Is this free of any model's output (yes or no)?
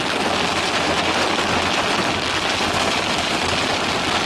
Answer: yes